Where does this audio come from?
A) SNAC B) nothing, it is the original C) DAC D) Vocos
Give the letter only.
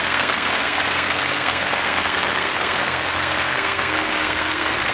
A